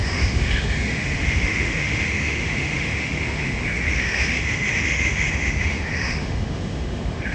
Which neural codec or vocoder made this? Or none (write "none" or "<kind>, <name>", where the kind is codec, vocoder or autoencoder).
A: autoencoder, DAC-VAE